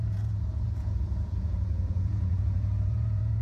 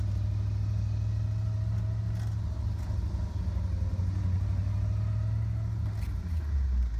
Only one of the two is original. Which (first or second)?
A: second